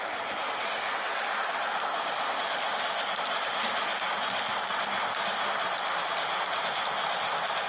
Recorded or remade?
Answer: recorded